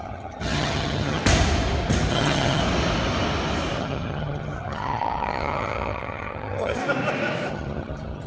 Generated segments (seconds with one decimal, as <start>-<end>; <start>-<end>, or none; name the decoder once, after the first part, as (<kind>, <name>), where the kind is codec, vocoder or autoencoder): 0.0-1.2 (vocoder, HiFi-GAN); 2.1-2.6; 3.8-6.8; 7.5-8.3